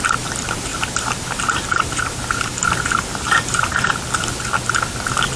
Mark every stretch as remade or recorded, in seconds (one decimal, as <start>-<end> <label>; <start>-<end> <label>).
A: 0.0-0.7 recorded; 0.7-3.9 remade; 3.9-5.4 recorded